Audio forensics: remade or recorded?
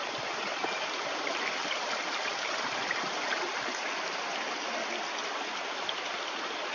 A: recorded